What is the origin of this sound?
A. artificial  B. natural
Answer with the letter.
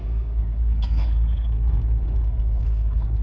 A